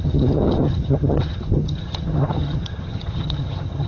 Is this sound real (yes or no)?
no